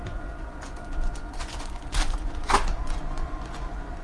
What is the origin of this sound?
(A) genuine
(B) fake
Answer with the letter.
B